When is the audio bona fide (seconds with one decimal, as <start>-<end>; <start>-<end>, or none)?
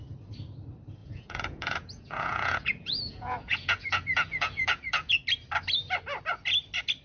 0.0-1.0; 5.1-7.0